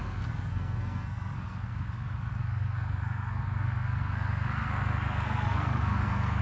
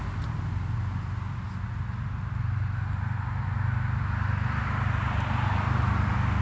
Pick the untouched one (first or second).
second